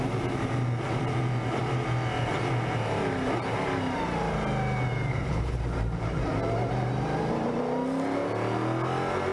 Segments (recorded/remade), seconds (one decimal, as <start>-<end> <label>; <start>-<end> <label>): 0.0-5.1 recorded; 5.1-5.6 remade; 5.6-9.3 recorded